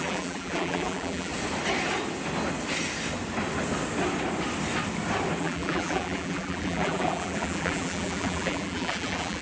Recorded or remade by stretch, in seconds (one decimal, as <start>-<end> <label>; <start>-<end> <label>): 0.0-1.3 remade; 1.3-5.4 recorded; 5.4-9.4 remade